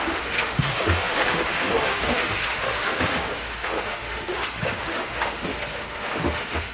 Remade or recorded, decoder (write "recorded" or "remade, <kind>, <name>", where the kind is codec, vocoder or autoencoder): remade, autoencoder, DAC-VAE